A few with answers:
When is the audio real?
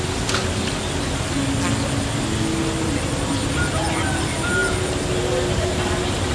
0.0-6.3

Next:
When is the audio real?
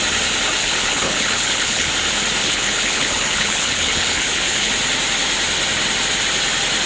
0.0-0.6; 1.9-2.4; 4.7-6.9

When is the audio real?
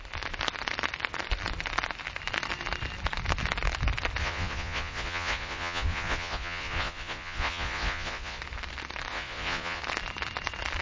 0.0-4.2; 8.4-9.1; 9.8-10.8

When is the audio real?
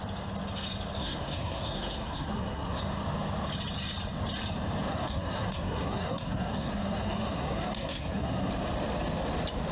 0.0-1.0; 2.8-4.9; 8.5-9.7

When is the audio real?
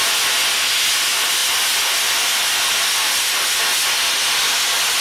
0.0-5.0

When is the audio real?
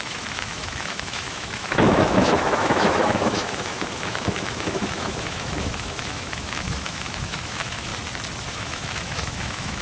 7.9-8.5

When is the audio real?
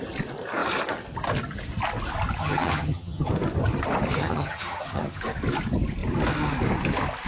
0.0-2.4; 3.3-4.2; 5.2-7.3